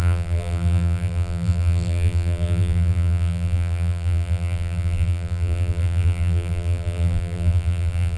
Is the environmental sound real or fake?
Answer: fake